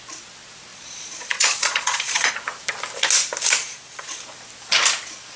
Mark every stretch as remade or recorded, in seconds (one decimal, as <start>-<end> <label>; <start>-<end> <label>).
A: 0.0-0.7 recorded; 0.7-2.3 remade; 2.3-3.6 recorded; 3.6-4.2 remade; 4.2-5.4 recorded